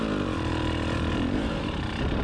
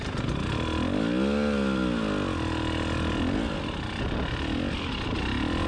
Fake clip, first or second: first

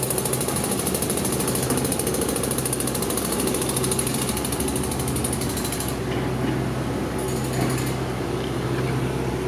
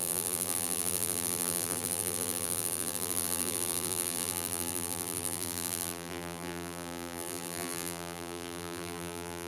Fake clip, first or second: second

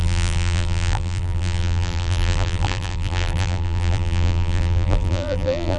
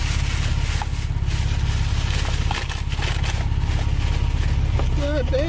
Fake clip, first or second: first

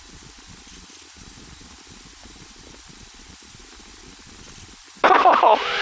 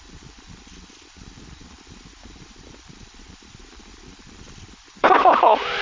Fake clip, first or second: second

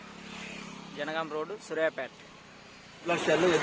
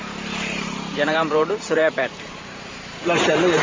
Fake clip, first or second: second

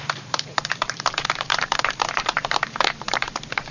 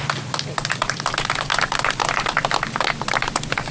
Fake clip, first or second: first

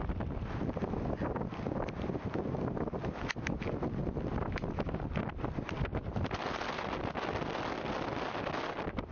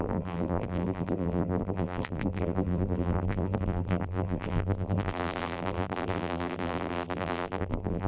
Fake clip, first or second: second